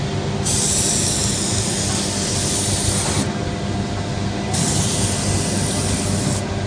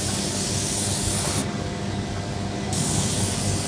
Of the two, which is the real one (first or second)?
first